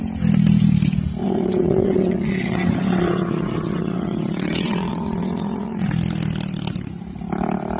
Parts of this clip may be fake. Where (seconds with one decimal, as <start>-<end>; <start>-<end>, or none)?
1.2-5.9